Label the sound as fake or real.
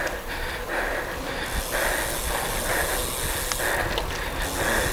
real